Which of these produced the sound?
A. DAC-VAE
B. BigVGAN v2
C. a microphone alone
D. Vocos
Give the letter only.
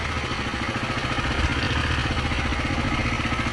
C